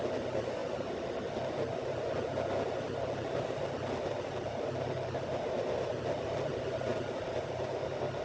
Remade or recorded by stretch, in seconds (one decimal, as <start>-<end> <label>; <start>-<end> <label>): 0.0-8.2 recorded